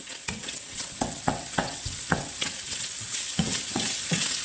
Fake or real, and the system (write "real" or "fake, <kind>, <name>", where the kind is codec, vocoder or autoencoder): fake, vocoder, WaveNeXt